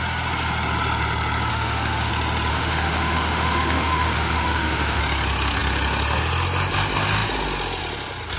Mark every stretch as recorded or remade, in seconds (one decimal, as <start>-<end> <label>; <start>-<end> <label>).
0.0-1.5 recorded; 1.5-2.1 remade; 2.1-2.5 recorded; 2.5-5.0 remade; 5.0-8.4 recorded